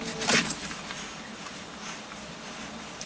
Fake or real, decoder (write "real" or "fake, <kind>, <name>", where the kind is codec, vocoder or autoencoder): fake, vocoder, BigVGAN v2